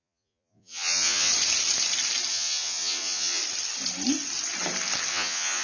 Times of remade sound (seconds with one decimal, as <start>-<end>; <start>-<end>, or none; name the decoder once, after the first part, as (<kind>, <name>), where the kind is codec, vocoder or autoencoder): 0.0-1.3 (vocoder, Vocos); 2.3-3.4; 5.1-5.6